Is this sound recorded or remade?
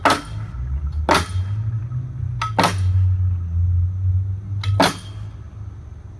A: recorded